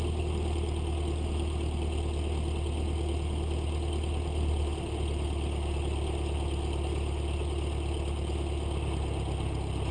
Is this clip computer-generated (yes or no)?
no